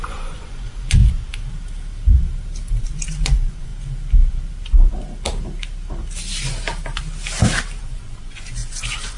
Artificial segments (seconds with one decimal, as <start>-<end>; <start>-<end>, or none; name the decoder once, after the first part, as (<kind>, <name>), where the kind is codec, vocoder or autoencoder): 0.0-1.0 (vocoder, Vocos); 2.8-3.7; 7.8-9.2